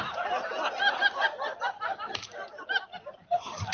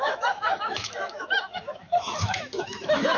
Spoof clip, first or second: second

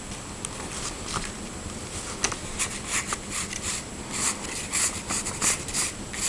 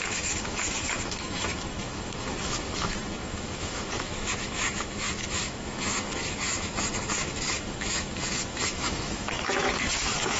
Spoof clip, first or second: second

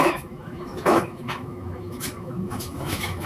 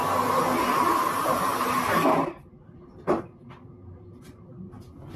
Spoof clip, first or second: first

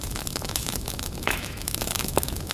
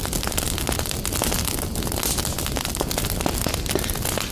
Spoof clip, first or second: first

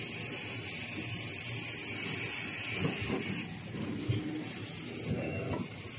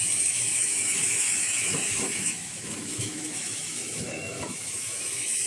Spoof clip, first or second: second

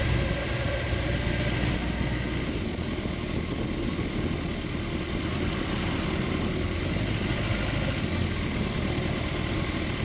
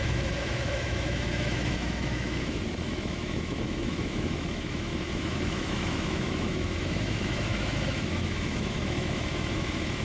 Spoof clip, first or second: second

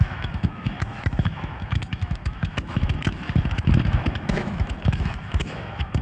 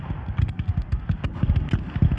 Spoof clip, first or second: first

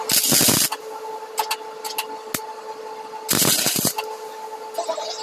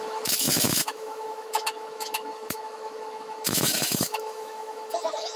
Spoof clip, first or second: second